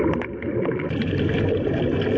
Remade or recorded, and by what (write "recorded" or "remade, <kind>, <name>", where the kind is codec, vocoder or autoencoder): recorded